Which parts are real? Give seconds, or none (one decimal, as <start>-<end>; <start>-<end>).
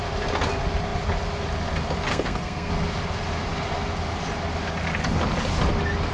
0.0-2.1; 2.7-6.1